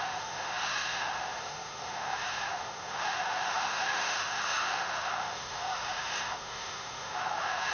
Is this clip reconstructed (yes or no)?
yes